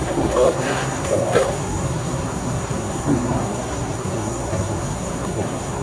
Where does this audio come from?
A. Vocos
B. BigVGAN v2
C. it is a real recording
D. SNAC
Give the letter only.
D